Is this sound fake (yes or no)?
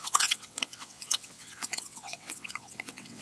yes